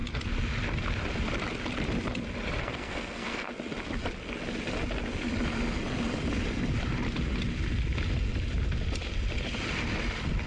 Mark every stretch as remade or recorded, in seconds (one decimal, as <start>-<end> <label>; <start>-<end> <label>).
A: 0.0-2.6 recorded; 2.6-3.5 remade; 3.5-10.5 recorded